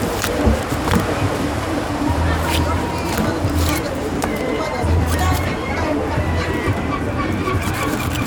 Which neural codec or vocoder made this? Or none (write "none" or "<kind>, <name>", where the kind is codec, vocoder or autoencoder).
vocoder, BigVGAN v2